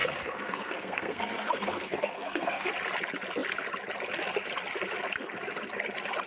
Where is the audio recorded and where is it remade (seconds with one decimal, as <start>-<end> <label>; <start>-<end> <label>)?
0.0-2.7 remade; 2.7-6.3 recorded